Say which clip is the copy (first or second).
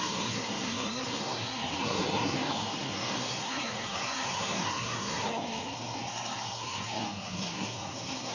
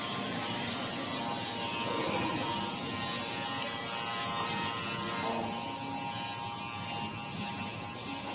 first